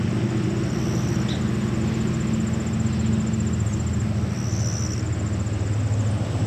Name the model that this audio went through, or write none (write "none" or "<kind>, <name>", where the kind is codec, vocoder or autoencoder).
none